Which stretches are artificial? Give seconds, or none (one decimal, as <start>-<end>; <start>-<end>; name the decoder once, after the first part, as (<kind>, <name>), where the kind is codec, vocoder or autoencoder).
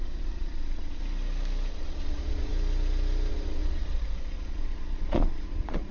0.0-1.0 (vocoder, Vocos); 1.7-2.5; 3.3-5.9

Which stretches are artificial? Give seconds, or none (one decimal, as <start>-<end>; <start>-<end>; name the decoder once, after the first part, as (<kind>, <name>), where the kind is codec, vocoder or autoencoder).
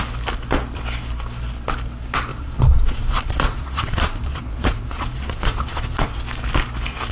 2.3-6.0 (vocoder, Vocos)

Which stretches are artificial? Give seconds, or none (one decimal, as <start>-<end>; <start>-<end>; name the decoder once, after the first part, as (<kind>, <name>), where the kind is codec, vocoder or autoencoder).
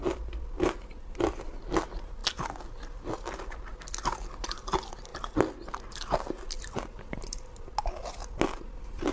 none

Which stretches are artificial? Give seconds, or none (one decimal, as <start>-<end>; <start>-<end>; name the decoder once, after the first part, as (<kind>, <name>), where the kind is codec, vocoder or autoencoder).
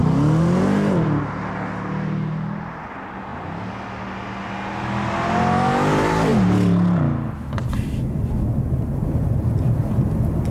none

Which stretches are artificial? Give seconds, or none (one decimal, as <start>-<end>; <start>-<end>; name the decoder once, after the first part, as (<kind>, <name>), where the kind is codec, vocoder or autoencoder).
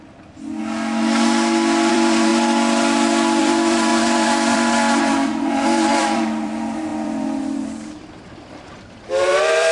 0.0-0.6 (vocoder, BigVGAN v2); 1.9-2.3; 3.4-9.7